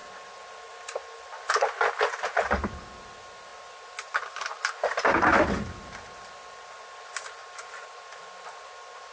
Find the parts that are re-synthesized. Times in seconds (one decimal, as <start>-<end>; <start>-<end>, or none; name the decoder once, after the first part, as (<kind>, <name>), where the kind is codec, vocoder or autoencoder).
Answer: none